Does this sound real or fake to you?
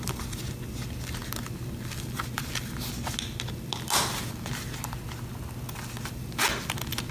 real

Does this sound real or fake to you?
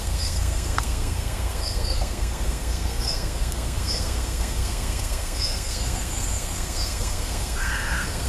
fake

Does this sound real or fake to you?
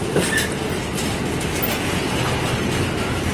real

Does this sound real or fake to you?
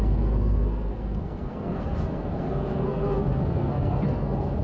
fake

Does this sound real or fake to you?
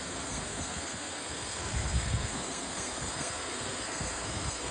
fake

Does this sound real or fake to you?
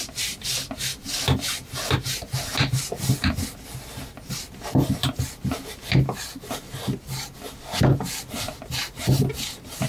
real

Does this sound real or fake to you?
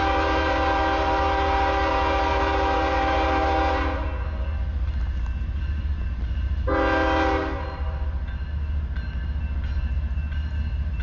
real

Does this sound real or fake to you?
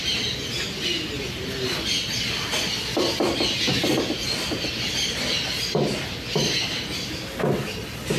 real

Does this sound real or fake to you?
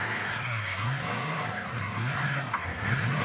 fake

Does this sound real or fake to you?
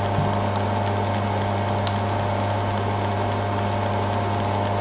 real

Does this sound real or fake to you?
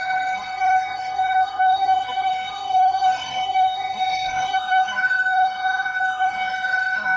fake